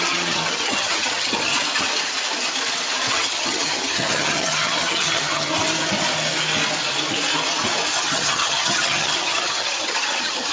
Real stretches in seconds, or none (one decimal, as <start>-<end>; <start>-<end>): 1.5-3.1; 5.5-8.0